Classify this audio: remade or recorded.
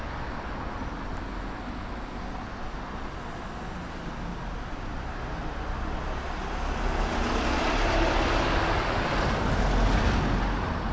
recorded